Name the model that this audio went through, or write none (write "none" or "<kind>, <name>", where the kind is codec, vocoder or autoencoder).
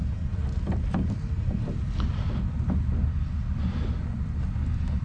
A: none